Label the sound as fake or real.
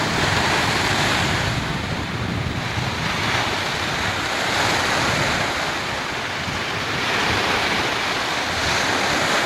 fake